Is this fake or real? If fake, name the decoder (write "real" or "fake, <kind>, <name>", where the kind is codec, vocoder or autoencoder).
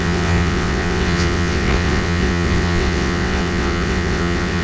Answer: fake, vocoder, WaveNeXt